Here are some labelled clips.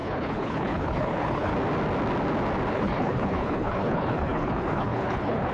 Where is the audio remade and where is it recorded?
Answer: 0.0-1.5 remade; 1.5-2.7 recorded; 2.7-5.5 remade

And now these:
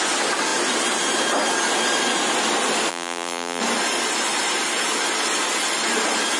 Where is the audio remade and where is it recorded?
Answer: 0.0-2.9 recorded; 2.9-3.6 remade; 3.6-6.4 recorded

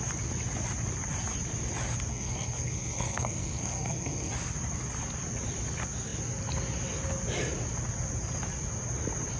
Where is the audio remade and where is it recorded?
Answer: 0.0-2.1 recorded; 2.1-4.3 remade; 4.3-9.4 recorded

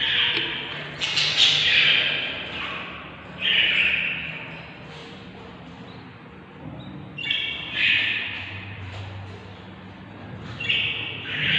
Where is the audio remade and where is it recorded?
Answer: 0.0-5.0 recorded; 5.0-5.7 remade; 5.7-7.2 recorded; 7.2-9.0 remade; 9.0-11.6 recorded

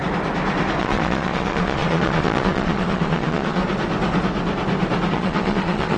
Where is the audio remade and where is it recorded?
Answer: 0.0-0.8 recorded; 0.8-3.6 remade; 3.6-5.1 recorded; 5.1-6.0 remade